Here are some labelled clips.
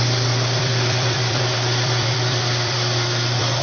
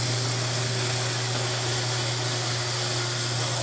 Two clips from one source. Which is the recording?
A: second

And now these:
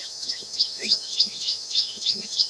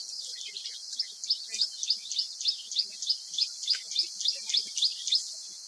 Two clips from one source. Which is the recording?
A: second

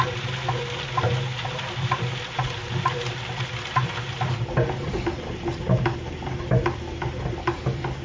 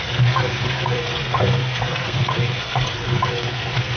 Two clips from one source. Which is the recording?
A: first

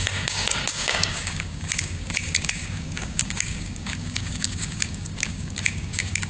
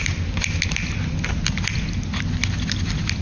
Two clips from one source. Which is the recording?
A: second